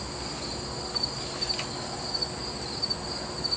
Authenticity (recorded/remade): recorded